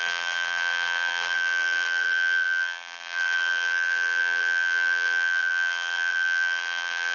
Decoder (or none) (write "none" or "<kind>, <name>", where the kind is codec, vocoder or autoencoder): vocoder, BigVGAN v2